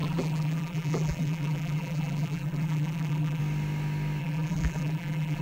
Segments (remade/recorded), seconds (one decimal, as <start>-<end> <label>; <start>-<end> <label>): 0.0-3.4 remade; 3.4-4.2 recorded; 4.2-5.4 remade